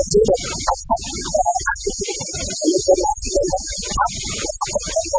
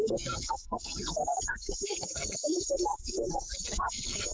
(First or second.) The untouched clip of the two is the first